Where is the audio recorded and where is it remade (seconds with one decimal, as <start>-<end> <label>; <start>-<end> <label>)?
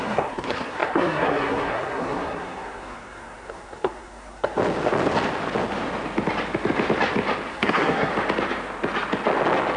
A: 0.0-4.6 remade; 4.6-7.5 recorded; 7.5-8.1 remade; 8.1-9.8 recorded